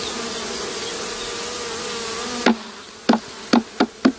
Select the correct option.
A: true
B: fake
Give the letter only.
A